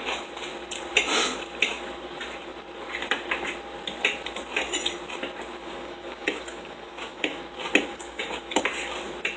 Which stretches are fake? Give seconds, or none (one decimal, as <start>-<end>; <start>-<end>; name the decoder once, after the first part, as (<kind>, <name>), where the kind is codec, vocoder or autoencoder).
5.6-7.4 (codec, DAC); 7.9-8.6